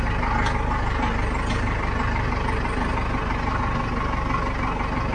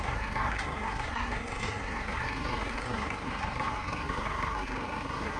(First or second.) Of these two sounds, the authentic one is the first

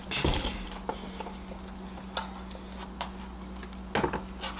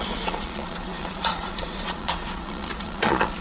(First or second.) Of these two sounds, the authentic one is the first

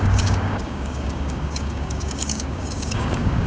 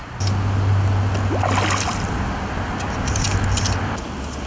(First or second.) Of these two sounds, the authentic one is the second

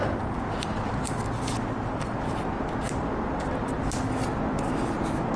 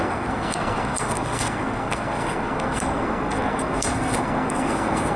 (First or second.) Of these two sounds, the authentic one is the first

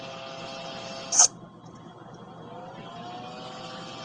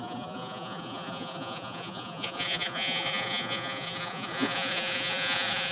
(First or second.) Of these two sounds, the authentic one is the first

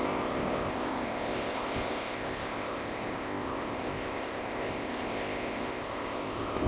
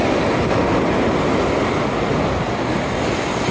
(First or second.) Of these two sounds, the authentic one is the second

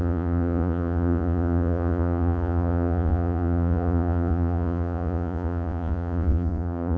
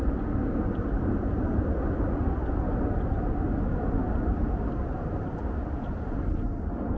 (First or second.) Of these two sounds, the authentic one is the second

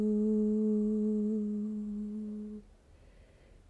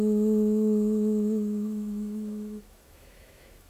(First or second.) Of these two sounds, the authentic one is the first